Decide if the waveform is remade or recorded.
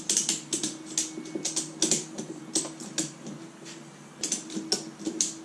recorded